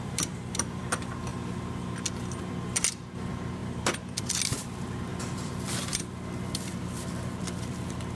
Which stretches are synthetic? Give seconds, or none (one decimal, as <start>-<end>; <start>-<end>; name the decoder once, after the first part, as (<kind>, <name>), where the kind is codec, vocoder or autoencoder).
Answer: 0.0-1.3 (vocoder, BigVGAN v2); 2.4-8.1